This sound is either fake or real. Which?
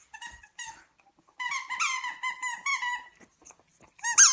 real